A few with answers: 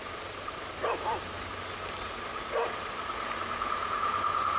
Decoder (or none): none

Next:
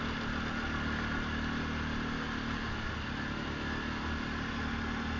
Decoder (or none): none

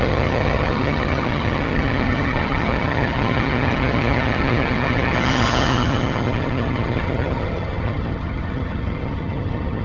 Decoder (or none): vocoder, HiFi-GAN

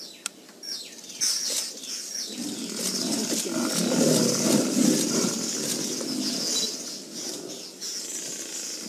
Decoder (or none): none